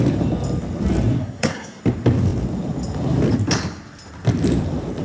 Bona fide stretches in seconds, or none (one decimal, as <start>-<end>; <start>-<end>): 0.0-1.2; 1.8-5.0